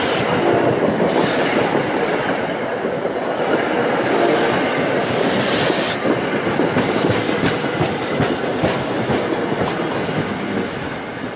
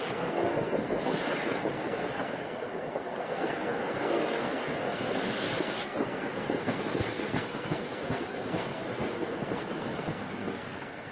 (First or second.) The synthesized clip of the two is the second